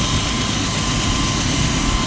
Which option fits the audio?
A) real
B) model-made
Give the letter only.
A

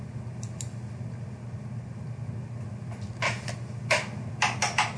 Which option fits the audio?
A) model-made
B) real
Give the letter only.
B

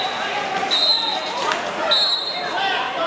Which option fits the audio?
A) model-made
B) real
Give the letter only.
B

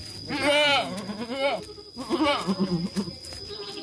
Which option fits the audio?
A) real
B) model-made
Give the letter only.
A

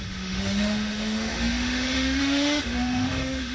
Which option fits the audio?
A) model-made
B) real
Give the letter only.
A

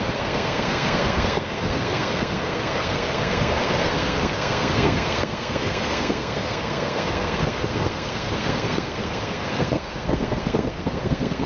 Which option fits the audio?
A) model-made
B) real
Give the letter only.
A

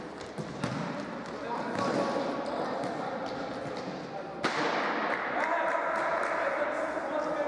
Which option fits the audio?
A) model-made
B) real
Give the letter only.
B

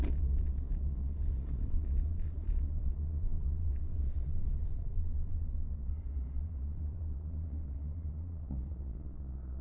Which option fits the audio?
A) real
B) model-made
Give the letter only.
B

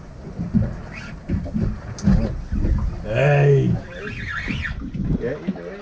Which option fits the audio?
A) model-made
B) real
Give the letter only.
B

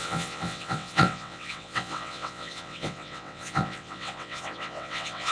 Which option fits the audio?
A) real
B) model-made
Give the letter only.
B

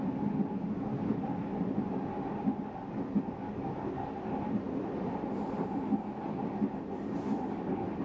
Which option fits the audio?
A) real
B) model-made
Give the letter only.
A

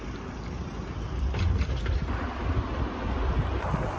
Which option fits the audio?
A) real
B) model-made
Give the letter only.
A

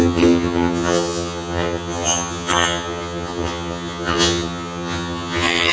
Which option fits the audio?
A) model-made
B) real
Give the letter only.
A